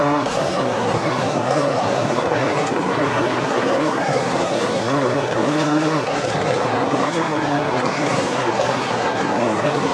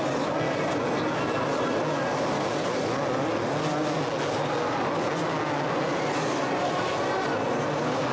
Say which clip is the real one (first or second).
second